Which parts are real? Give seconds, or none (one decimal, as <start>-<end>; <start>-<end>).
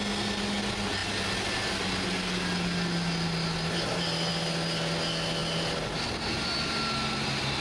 0.0-7.6